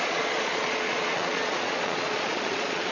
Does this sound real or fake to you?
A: fake